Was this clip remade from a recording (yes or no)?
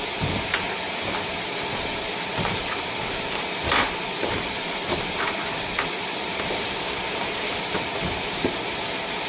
yes